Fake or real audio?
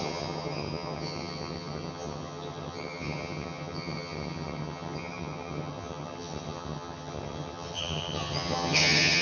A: fake